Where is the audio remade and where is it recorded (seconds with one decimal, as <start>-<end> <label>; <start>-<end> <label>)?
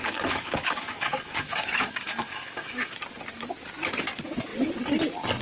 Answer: 0.0-2.9 remade; 2.9-5.4 recorded